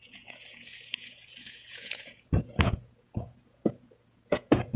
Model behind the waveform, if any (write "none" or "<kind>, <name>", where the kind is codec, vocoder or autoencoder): vocoder, Vocos